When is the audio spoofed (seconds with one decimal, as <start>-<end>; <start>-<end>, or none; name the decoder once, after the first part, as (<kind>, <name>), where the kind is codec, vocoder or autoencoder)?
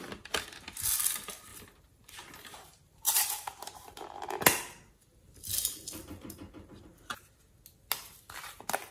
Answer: 1.5-3.5 (vocoder, BigVGAN v2)